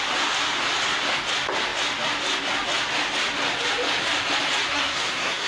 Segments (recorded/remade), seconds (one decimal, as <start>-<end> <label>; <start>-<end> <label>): 0.0-4.7 recorded; 4.7-5.5 remade